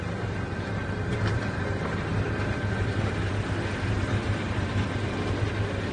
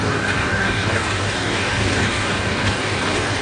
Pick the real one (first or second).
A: first